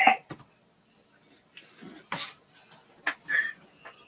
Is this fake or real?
real